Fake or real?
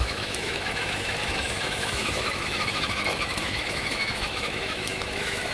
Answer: fake